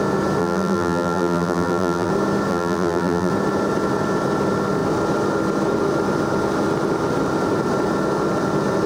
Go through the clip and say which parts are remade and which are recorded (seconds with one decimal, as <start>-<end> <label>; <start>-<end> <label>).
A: 0.0-0.4 recorded; 0.4-2.1 remade; 2.1-2.5 recorded; 2.5-3.3 remade; 3.3-8.9 recorded